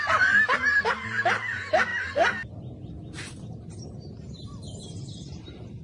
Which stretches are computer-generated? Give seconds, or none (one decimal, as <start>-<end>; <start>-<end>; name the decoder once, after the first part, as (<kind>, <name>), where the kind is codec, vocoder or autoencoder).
0.0-1.9 (vocoder, BigVGAN v2); 3.6-5.8